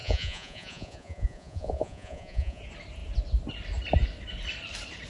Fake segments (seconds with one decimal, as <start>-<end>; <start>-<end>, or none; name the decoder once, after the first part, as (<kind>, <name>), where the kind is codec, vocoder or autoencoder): 0.0-2.6 (vocoder, Vocos)